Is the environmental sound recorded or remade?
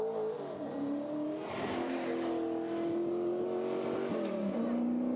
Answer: recorded